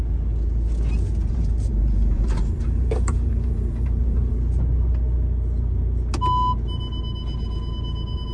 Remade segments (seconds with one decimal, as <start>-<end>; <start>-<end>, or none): 1.2-4.3